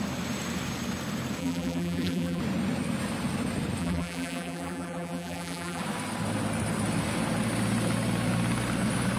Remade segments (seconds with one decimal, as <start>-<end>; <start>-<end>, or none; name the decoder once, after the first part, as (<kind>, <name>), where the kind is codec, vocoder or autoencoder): 1.4-2.4 (vocoder, BigVGAN v2); 3.8-5.8